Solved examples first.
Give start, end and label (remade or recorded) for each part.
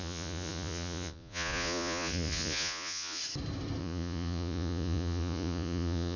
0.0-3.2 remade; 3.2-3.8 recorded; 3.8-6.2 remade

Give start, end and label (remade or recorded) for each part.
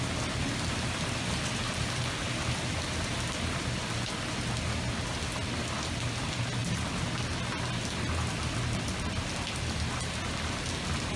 0.0-11.2 recorded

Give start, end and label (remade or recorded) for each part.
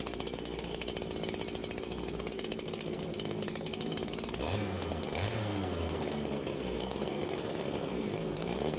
0.0-0.9 remade; 0.9-1.8 recorded; 1.8-8.8 remade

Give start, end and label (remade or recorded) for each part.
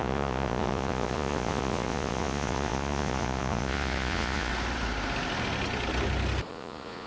0.0-4.5 remade; 4.5-6.5 recorded; 6.5-7.1 remade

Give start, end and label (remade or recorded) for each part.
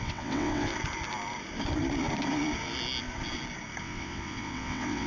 0.0-0.7 remade; 0.7-3.8 recorded; 3.8-5.1 remade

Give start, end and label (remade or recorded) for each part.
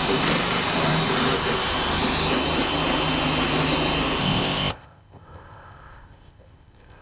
0.0-4.2 recorded; 4.2-7.0 remade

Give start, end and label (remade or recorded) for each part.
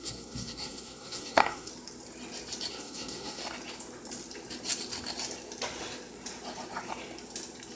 0.0-1.7 remade; 1.7-2.7 recorded; 2.7-3.4 remade; 3.4-7.8 recorded